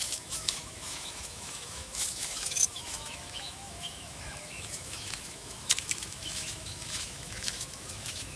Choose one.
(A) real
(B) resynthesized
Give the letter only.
B